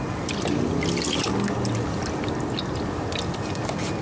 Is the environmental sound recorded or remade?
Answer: recorded